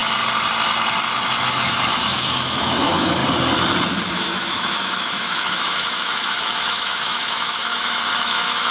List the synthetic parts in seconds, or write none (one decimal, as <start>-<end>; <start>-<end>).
1.5-3.2; 4.1-8.7